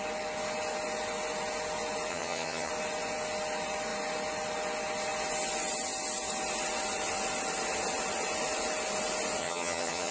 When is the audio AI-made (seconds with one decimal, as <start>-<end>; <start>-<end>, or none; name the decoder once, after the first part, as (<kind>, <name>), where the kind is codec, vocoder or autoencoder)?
2.1-2.7 (vocoder, HiFi-GAN); 9.4-10.1